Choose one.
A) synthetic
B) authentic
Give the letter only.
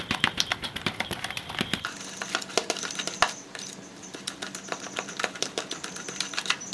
A